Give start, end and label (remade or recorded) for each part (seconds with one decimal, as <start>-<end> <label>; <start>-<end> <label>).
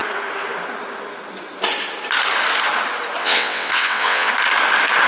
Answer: 0.0-3.2 recorded; 3.2-4.3 remade; 4.3-5.1 recorded